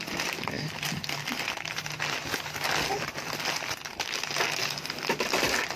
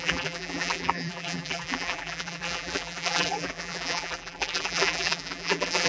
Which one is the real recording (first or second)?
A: first